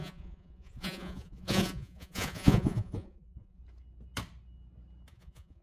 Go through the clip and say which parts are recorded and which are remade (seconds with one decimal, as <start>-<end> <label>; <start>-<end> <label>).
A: 0.0-3.6 remade; 3.6-5.1 recorded; 5.1-5.6 remade